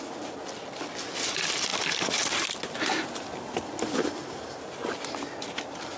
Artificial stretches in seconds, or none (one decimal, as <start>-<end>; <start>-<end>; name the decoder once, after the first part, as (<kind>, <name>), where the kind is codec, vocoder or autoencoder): none